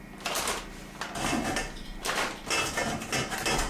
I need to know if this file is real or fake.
real